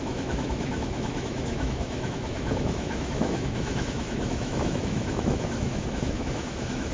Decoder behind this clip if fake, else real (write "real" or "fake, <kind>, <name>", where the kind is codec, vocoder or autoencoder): fake, autoencoder, DAC-VAE